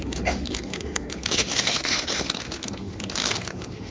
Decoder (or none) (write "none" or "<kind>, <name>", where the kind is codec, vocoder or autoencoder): autoencoder, DAC-VAE